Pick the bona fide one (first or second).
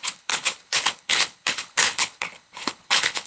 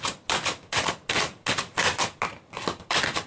second